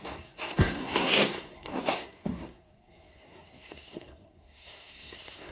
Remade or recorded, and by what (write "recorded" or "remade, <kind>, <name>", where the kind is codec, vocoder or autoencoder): remade, codec, SNAC